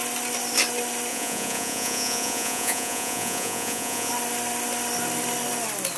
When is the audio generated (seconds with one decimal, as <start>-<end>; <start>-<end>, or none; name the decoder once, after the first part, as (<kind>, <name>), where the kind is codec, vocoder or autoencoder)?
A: 1.1-4.1 (vocoder, Vocos)